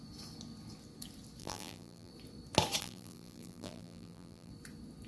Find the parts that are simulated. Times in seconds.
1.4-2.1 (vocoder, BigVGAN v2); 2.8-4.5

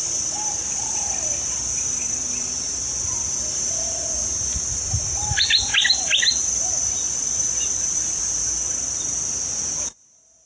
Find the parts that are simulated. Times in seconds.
0.0-1.7 (vocoder, BigVGAN v2); 3.5-4.2; 6.8-8.4

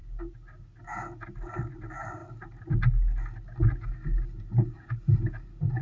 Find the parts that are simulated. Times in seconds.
none

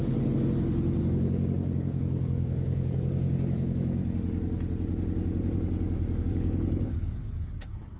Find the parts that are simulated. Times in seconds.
1.0-4.0 (codec, DAC); 6.2-8.0

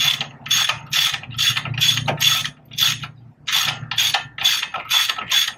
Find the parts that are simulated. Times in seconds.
none

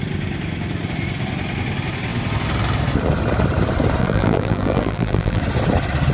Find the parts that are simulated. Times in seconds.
4.0-5.4 (vocoder, BigVGAN v2)

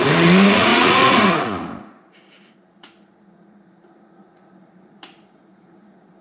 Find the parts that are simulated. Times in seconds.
0.0-6.2 (vocoder, Vocos)

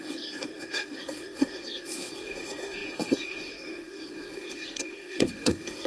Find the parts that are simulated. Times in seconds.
0.0-5.9 (codec, SNAC)